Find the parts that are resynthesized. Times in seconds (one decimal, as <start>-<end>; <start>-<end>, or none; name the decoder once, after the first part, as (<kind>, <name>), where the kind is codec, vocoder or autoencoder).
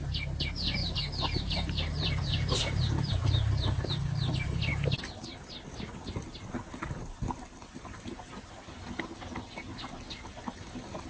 0.8-3.1 (vocoder, BigVGAN v2)